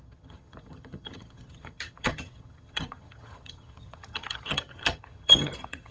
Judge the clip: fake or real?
fake